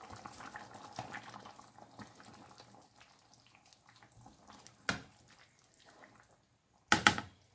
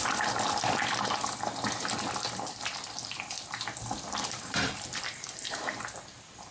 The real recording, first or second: first